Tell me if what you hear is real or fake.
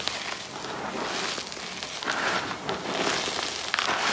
real